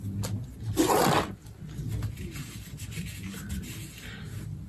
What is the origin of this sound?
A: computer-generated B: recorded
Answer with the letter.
B